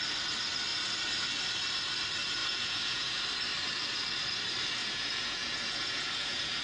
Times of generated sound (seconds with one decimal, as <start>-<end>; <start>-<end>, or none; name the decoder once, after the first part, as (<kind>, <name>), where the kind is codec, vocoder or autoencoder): 2.4-3.2 (vocoder, Vocos); 4.8-6.6